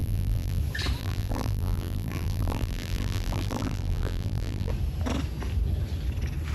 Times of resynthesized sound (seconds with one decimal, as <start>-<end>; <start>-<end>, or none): 0.0-0.6; 1.0-4.7